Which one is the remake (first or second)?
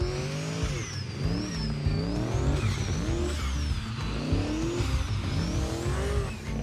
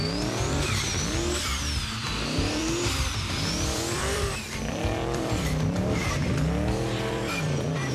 second